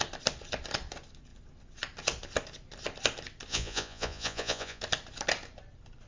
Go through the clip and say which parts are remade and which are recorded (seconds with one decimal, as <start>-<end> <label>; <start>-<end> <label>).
0.0-3.5 recorded; 3.5-4.8 remade; 4.8-6.1 recorded